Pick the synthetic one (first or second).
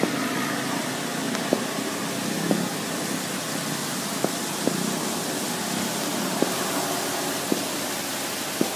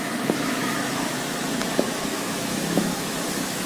second